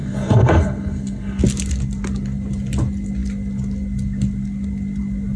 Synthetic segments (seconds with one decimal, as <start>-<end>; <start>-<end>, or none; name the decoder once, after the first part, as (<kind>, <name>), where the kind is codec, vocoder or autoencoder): 0.0-1.4 (codec, SNAC)